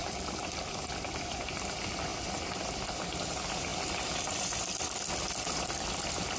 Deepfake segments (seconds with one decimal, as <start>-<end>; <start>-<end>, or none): 0.0-6.4